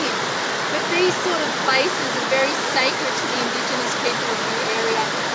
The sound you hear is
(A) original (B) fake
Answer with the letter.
A